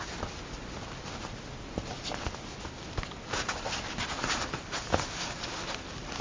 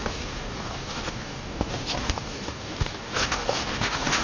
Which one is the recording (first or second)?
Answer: first